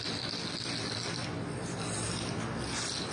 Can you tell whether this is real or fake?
real